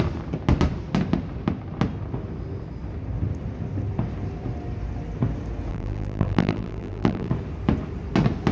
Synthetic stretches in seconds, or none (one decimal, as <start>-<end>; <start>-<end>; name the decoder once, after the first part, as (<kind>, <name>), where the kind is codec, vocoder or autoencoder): 5.7-7.3 (vocoder, BigVGAN v2)